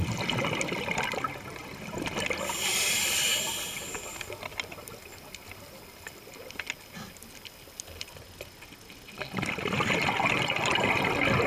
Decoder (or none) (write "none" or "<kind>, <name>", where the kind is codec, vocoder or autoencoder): none